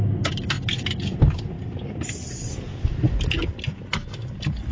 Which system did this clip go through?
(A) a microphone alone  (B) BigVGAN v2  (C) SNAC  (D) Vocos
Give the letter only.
A